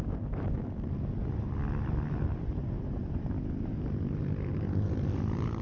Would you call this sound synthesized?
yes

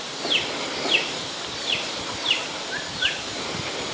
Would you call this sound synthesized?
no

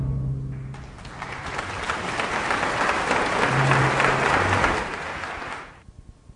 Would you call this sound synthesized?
no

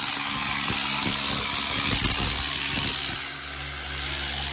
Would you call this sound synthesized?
no